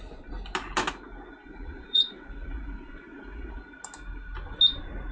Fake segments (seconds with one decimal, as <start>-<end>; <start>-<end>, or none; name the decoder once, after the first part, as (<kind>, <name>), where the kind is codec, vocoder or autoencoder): 1.5-3.6 (vocoder, Vocos)